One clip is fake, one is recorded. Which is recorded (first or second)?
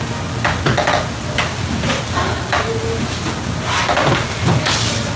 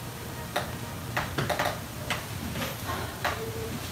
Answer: first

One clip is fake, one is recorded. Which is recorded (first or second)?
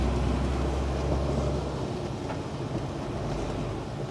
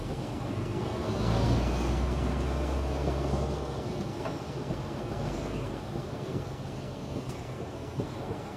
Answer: first